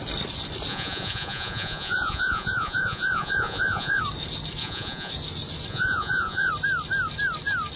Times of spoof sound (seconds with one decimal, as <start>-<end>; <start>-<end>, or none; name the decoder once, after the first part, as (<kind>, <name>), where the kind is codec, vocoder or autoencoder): 0.7-4.0 (vocoder, Vocos); 4.6-5.1; 5.7-6.5